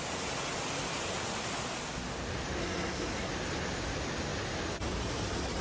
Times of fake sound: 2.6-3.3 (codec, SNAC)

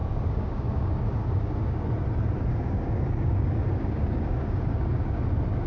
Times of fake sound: 0.0-1.8 (codec, DAC); 2.5-5.2

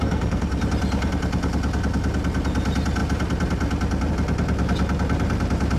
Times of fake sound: 0.0-0.6 (codec, SNAC)

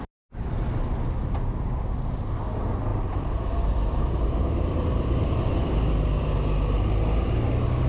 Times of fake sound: 2.9-5.5 (vocoder, BigVGAN v2)

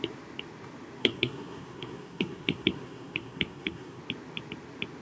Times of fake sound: 1.0-4.0 (codec, SNAC)

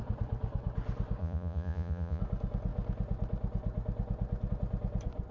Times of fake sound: 1.2-2.2 (vocoder, Vocos)

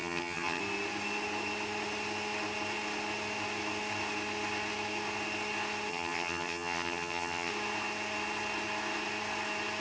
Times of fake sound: 0.0-0.6 (vocoder, HiFi-GAN); 5.9-7.5